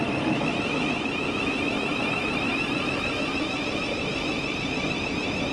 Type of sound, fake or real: real